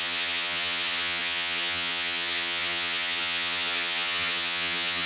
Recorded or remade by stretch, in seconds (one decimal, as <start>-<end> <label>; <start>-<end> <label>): 0.0-5.1 remade